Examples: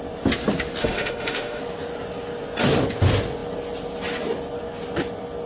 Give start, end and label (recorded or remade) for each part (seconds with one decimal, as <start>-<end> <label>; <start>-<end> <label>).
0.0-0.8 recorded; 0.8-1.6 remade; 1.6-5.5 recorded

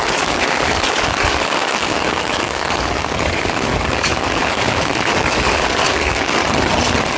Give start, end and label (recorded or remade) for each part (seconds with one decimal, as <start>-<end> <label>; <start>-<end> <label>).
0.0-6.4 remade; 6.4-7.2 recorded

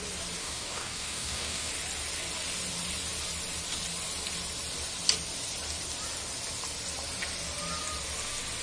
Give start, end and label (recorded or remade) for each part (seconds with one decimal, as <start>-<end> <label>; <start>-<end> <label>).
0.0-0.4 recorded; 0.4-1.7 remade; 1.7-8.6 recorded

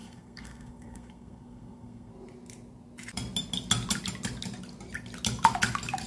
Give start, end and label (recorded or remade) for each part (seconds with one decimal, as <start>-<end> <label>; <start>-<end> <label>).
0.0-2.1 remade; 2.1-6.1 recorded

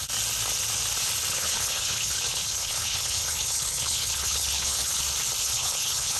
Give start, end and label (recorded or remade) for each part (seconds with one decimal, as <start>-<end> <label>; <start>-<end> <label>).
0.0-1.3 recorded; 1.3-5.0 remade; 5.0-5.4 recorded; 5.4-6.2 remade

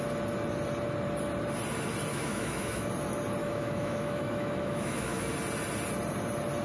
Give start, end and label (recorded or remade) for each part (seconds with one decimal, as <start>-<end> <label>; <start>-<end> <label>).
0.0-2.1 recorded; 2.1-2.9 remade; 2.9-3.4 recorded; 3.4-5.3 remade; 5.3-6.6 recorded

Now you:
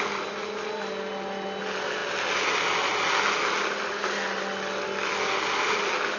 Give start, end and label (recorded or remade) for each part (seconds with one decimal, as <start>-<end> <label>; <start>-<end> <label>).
0.0-6.2 recorded

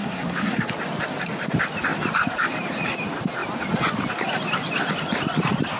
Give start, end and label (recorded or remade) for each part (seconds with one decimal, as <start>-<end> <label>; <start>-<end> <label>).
0.0-0.7 remade; 0.7-5.8 recorded